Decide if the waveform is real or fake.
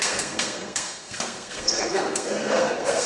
fake